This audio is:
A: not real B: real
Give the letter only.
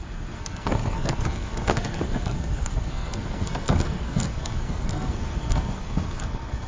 A